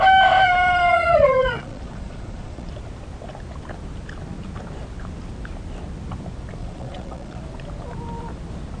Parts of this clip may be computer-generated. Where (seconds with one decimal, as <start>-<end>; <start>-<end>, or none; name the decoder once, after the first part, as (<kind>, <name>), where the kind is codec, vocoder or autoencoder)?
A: 0.9-2.7 (vocoder, Vocos); 6.6-7.4